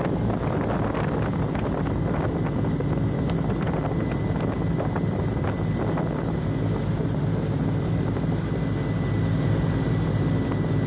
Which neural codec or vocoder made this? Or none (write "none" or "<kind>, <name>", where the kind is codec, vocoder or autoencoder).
none